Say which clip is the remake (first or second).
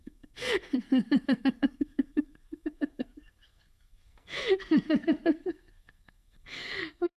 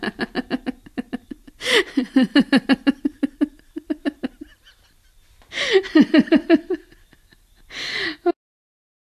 first